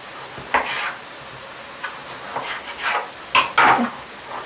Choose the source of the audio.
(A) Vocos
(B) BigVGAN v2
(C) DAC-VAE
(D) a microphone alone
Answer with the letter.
D